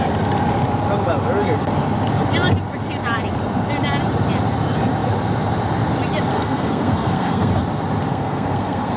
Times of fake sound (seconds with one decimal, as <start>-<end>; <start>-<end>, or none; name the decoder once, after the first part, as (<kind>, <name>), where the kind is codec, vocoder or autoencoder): 6.3-7.5 (codec, SNAC); 8.1-9.0